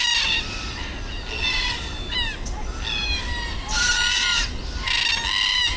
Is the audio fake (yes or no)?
no